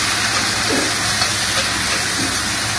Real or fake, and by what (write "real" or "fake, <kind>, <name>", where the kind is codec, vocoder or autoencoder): real